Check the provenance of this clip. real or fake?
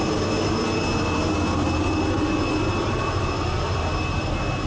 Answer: real